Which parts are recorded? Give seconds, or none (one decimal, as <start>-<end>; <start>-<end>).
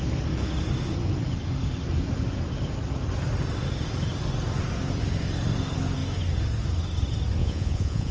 0.0-7.4